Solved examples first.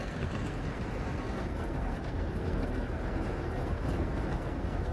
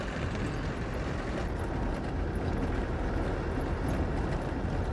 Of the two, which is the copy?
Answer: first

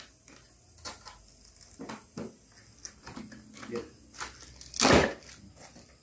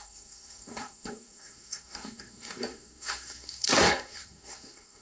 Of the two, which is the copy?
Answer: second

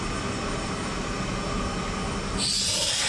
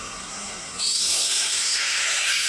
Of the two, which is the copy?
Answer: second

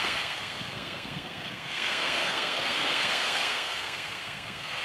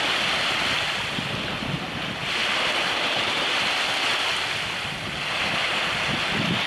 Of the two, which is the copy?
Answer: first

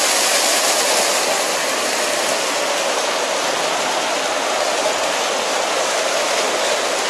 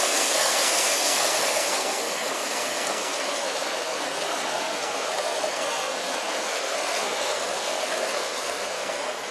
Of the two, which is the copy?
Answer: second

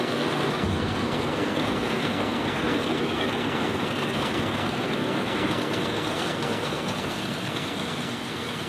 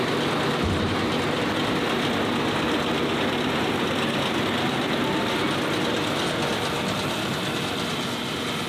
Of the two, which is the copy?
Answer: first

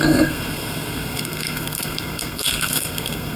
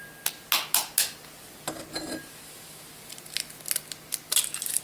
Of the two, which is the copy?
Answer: first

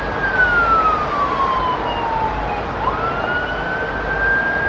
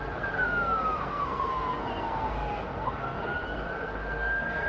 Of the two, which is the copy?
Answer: second